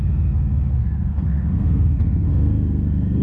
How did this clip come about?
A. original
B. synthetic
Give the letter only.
B